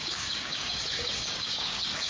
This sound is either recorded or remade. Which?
remade